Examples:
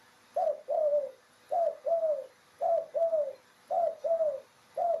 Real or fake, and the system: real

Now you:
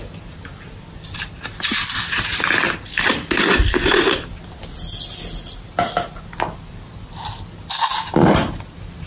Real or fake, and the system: real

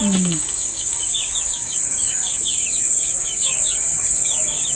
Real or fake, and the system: fake, codec, DAC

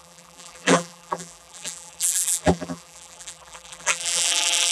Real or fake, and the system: fake, vocoder, BigVGAN v2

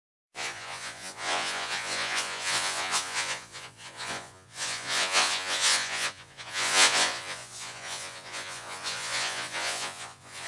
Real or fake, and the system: fake, vocoder, Vocos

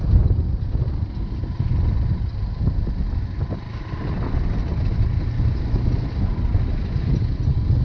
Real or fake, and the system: real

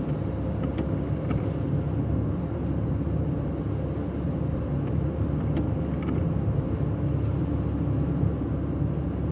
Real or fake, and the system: real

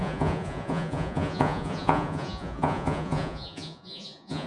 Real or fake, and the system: fake, vocoder, Vocos